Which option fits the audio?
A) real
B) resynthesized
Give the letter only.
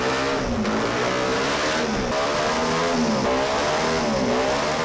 A